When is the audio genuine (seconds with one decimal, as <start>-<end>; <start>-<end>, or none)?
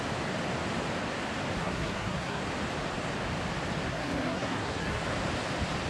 0.0-1.6; 2.4-3.9; 5.0-5.9